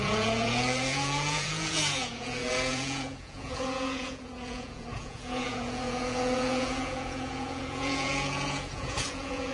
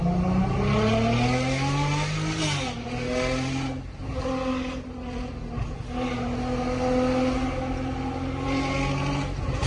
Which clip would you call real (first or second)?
second